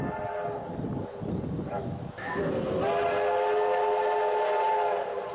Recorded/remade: recorded